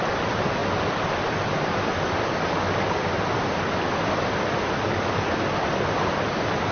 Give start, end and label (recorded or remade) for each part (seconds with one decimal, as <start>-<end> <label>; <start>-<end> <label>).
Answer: 0.0-6.7 recorded